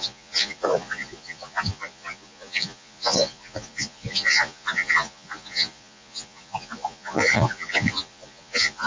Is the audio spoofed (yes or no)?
yes